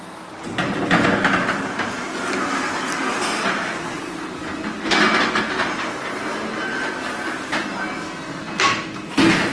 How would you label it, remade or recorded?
recorded